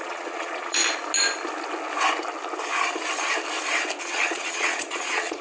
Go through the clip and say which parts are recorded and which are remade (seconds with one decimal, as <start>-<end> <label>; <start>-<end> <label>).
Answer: 0.0-0.8 remade; 0.8-4.0 recorded; 4.0-5.4 remade